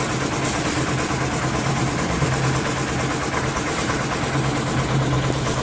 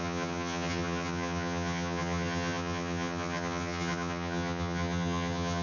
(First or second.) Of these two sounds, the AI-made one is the second